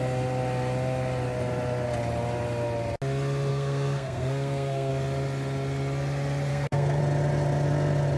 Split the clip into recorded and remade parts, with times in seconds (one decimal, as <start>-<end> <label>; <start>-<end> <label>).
0.0-3.5 recorded; 3.5-4.9 remade; 4.9-6.5 recorded; 6.5-7.0 remade; 7.0-8.2 recorded

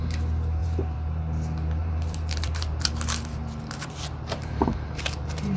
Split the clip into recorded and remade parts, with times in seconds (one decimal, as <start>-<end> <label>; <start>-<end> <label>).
0.0-0.6 recorded; 0.6-1.2 remade; 1.2-1.8 recorded; 1.8-5.6 remade

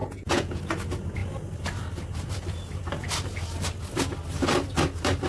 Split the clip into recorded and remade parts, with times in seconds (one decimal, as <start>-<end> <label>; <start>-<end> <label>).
0.0-0.6 remade; 0.6-5.3 recorded

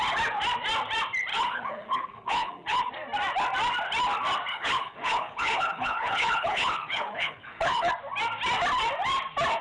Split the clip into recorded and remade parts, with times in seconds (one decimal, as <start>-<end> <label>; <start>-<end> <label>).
0.0-1.3 recorded; 1.3-2.9 remade; 2.9-4.5 recorded; 4.5-7.9 remade; 7.9-9.6 recorded

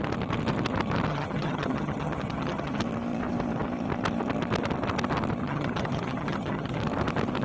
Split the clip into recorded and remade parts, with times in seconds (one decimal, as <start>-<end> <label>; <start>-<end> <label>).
0.0-1.1 recorded; 1.1-2.8 remade; 2.8-5.4 recorded; 5.4-6.8 remade; 6.8-7.4 recorded